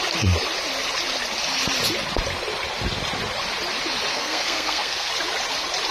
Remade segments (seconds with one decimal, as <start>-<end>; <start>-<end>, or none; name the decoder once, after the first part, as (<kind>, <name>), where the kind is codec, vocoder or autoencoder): 4.1-5.1 (codec, SNAC)